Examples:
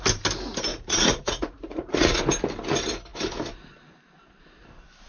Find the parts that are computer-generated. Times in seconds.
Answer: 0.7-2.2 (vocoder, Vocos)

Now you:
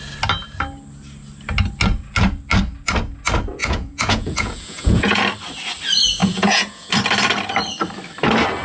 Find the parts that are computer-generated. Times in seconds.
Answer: 3.6-5.2 (vocoder, Vocos); 6.2-6.9

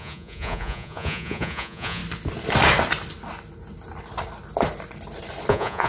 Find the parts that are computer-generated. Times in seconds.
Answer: 0.0-2.0 (vocoder, Vocos); 5.5-5.9